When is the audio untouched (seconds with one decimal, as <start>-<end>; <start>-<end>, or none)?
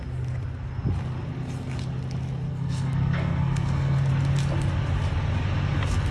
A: 0.0-2.5; 4.1-6.1